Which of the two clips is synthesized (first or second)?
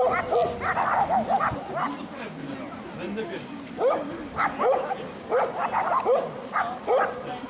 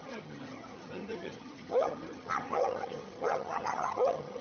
second